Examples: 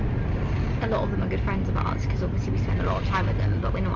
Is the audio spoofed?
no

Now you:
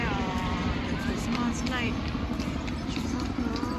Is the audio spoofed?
yes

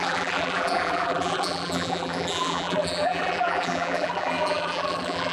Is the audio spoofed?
yes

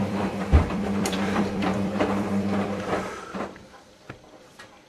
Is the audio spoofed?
yes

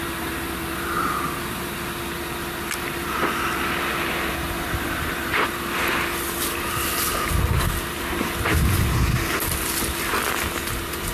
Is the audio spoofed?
no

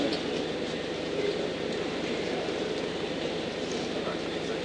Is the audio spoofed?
yes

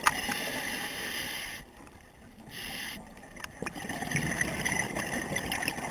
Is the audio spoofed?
yes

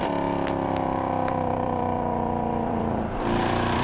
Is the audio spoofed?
yes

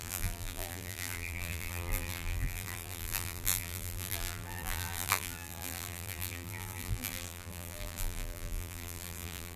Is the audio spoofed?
yes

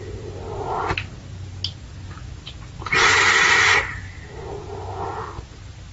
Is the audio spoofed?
no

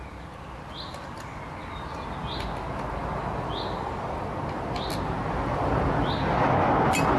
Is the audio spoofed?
no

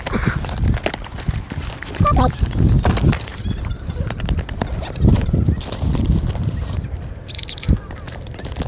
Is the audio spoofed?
no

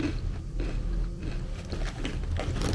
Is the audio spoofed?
no